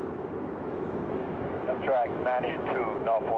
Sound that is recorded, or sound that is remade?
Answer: remade